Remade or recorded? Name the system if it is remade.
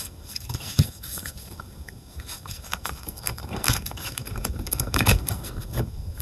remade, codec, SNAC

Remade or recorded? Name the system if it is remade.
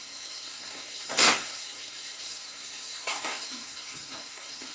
remade, codec, SNAC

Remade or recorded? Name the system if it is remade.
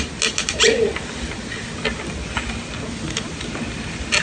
recorded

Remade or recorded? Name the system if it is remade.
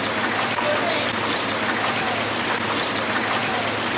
recorded